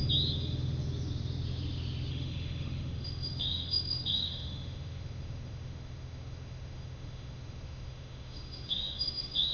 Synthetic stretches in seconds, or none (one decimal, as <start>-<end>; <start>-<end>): 2.1-9.5